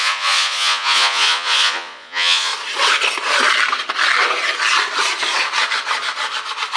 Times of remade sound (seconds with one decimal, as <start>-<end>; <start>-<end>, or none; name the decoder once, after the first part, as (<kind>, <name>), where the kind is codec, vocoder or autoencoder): 0.0-2.5 (vocoder, Vocos)